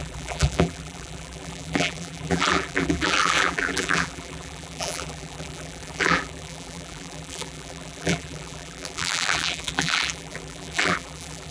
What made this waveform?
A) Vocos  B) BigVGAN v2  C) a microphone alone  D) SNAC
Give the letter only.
B